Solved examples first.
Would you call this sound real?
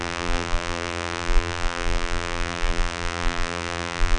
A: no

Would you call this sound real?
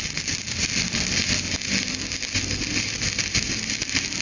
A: yes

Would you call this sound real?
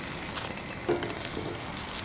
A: yes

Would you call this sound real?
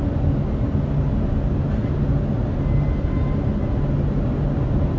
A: yes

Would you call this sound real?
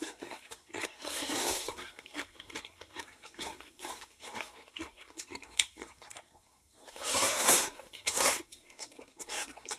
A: no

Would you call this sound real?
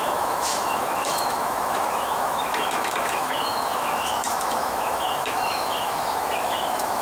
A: no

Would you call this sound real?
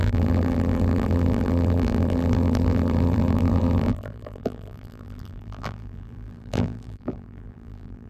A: no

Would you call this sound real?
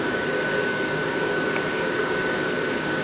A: no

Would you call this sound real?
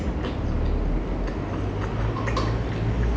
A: yes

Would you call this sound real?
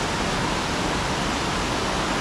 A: yes